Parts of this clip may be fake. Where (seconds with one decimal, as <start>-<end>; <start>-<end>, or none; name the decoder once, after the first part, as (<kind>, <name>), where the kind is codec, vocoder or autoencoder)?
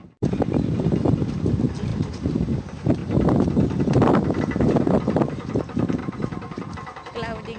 1.9-2.6 (vocoder, BigVGAN v2); 6.0-6.7